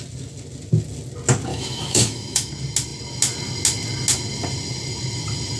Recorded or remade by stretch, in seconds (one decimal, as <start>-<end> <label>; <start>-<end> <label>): 0.0-1.5 recorded; 1.5-2.5 remade; 2.5-5.6 recorded